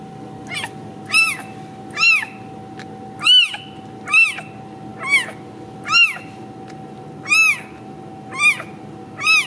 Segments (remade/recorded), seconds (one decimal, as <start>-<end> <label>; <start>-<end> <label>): 0.0-9.5 recorded